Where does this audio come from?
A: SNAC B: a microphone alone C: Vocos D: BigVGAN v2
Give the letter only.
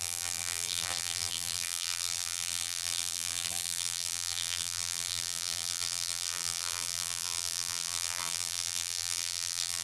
D